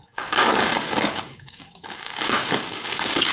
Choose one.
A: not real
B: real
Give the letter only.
A